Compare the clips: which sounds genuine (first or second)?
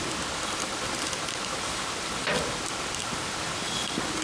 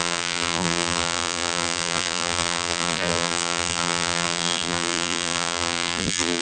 first